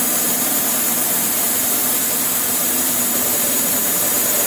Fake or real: fake